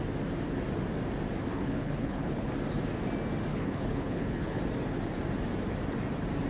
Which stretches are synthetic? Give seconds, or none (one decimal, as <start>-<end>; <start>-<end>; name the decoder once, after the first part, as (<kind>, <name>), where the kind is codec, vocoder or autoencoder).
1.5-2.5 (codec, HILCodec); 3.5-4.6